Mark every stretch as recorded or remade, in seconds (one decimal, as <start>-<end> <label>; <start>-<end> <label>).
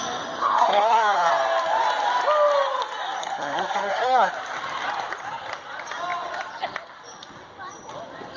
0.0-0.4 recorded; 0.4-1.3 remade; 1.3-3.2 recorded; 3.2-4.3 remade; 4.3-8.4 recorded